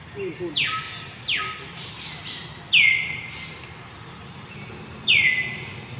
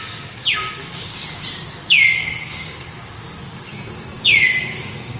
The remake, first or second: second